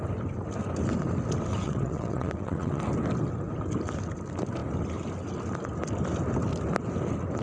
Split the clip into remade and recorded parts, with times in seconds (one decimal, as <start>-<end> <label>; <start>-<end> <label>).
0.0-1.5 recorded; 1.5-2.8 remade; 2.8-7.4 recorded